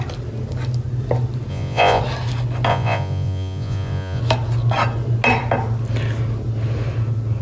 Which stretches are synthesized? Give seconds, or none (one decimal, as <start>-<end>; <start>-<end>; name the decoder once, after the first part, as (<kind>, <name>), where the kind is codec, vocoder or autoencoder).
1.5-2.0 (vocoder, Vocos); 2.7-4.2

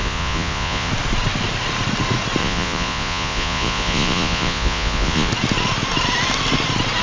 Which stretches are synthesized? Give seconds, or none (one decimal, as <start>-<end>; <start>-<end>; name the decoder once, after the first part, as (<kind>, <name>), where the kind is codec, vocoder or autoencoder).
0.0-0.9 (vocoder, Vocos); 2.4-5.3

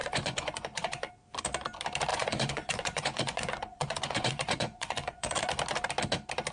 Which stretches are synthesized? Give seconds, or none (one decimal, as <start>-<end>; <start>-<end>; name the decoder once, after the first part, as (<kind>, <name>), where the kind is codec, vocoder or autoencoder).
0.0-1.1 (vocoder, Vocos); 2.1-5.4

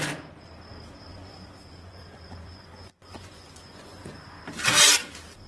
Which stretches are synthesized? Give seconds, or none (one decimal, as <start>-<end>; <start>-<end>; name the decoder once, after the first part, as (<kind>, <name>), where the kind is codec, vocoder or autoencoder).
1.1-4.4 (vocoder, Vocos)

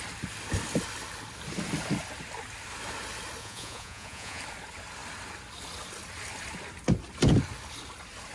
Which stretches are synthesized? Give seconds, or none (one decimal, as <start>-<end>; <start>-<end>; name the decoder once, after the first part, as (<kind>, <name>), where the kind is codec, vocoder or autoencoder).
3.4-4.4 (vocoder, Vocos)

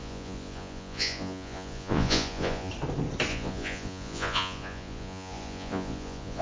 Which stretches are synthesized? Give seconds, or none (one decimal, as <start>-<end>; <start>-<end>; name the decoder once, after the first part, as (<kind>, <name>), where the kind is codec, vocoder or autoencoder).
0.0-2.7 (vocoder, Vocos); 3.3-6.4

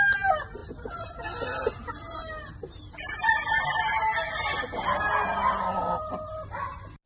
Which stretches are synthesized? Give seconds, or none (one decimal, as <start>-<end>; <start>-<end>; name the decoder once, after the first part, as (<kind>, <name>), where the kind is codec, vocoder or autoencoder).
none